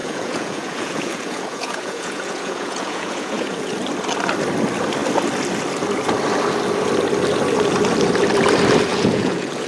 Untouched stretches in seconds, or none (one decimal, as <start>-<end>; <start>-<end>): 3.7-8.9